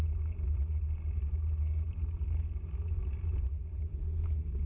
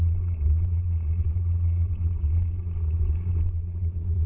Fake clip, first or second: second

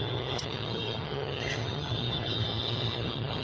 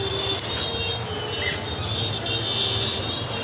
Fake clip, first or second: first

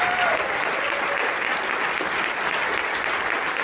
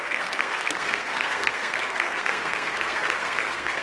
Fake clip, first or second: second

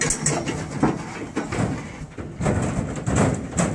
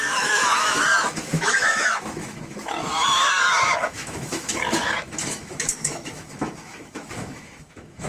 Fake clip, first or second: second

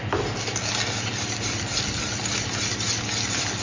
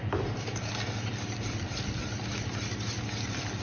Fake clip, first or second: second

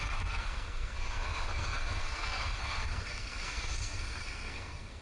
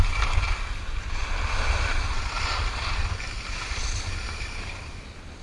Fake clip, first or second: first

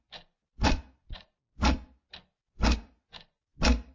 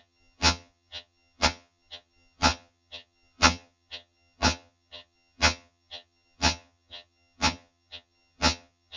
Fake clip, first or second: second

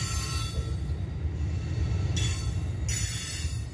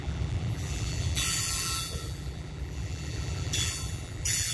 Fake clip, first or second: second